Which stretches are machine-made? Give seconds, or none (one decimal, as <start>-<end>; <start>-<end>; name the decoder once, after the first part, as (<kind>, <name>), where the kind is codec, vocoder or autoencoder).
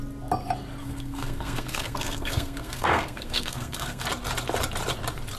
0.8-4.0 (codec, SNAC)